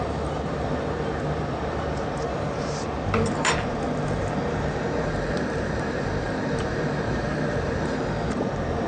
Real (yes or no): no